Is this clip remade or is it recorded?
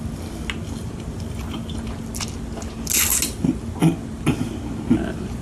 recorded